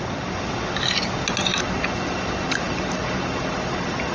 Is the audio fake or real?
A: real